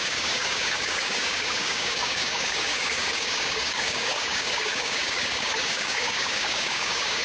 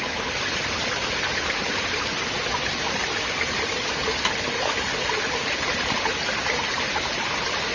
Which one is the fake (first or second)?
first